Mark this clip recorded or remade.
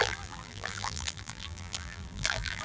remade